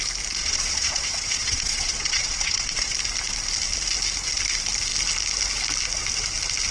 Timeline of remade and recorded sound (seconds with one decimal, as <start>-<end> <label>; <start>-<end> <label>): 0.0-0.4 recorded; 0.4-2.9 remade; 2.9-6.7 recorded

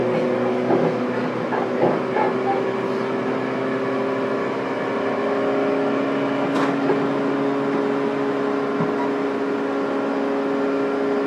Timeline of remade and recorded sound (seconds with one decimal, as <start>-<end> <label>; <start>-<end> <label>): 0.0-11.3 recorded